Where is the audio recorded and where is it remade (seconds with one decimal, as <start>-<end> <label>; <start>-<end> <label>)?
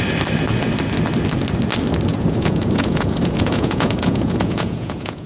0.0-2.1 recorded; 2.1-5.3 remade